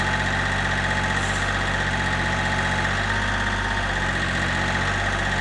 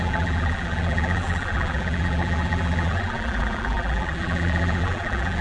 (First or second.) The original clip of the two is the first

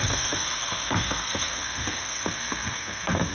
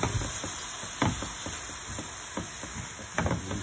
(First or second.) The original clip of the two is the second